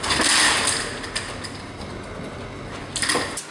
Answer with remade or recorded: recorded